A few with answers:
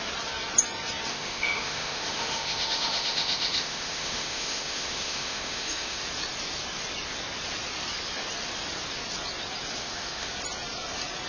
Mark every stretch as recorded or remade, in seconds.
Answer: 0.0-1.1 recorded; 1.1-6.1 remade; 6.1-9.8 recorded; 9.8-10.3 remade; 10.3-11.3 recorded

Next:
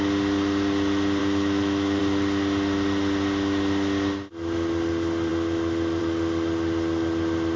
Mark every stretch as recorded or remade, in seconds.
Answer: 0.0-1.2 recorded; 1.2-2.0 remade; 2.0-7.6 recorded

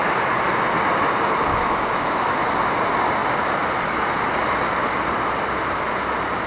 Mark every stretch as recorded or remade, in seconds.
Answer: 0.0-1.5 recorded; 1.5-2.4 remade; 2.4-6.5 recorded

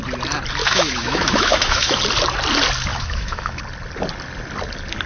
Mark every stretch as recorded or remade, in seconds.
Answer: 0.0-0.6 recorded; 0.6-2.0 remade; 2.0-2.9 recorded; 2.9-3.6 remade; 3.6-5.1 recorded

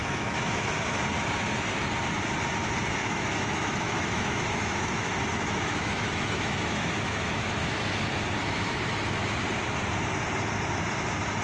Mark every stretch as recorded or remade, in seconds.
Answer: 0.0-1.0 remade; 1.0-3.0 recorded; 3.0-8.0 remade; 8.0-8.4 recorded; 8.4-9.3 remade; 9.3-11.4 recorded

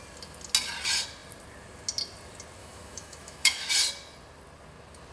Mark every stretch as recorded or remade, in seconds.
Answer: 0.0-2.6 recorded; 2.6-3.7 remade; 3.7-5.1 recorded